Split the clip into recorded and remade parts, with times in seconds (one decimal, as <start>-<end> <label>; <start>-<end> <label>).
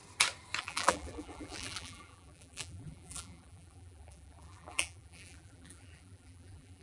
0.0-0.6 recorded; 0.6-6.8 remade